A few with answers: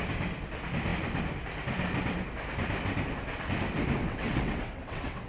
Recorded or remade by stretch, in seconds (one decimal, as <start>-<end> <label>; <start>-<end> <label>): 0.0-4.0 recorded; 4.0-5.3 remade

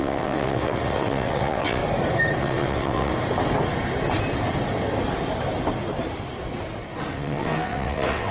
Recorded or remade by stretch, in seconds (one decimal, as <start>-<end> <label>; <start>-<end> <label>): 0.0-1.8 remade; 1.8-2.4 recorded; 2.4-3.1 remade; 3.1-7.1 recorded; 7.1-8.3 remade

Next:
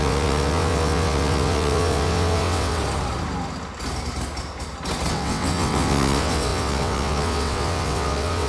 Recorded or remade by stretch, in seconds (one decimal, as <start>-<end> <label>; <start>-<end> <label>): 0.0-2.8 remade; 2.8-5.1 recorded; 5.1-8.5 remade

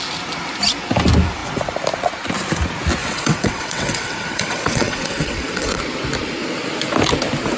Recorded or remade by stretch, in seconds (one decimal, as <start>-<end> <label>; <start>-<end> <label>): 0.0-3.0 recorded; 3.0-5.8 remade; 5.8-7.6 recorded

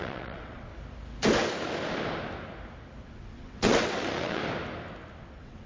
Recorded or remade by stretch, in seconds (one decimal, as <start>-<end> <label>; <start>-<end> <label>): 0.0-0.7 remade; 0.7-3.0 recorded; 3.0-4.4 remade; 4.4-5.2 recorded; 5.2-5.7 remade

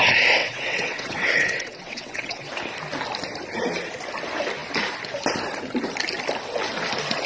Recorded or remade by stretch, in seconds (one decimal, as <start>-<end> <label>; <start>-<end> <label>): 0.0-0.4 recorded; 0.4-2.5 remade; 2.5-7.3 recorded